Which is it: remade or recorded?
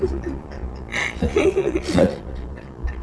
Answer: remade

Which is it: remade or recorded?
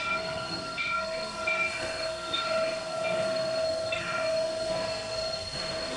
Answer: remade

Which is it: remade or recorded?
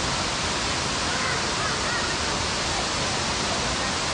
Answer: recorded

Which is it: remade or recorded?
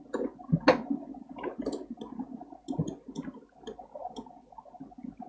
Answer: recorded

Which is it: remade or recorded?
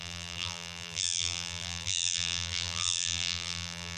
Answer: remade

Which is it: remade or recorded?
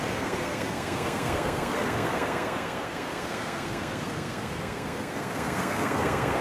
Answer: remade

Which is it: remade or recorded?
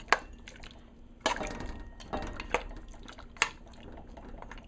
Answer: recorded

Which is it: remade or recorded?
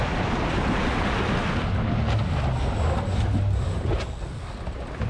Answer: recorded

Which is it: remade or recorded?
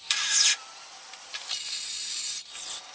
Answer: recorded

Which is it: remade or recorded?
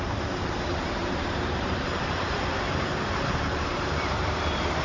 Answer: remade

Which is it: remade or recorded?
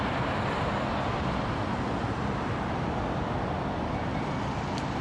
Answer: recorded